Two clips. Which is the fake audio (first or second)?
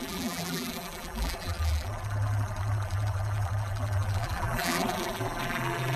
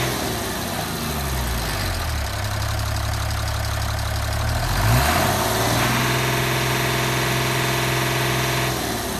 first